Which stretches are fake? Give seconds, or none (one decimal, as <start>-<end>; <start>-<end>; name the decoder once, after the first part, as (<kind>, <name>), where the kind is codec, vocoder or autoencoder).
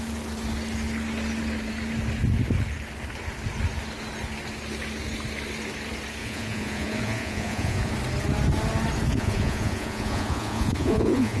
6.2-7.9 (vocoder, Vocos); 9.1-11.4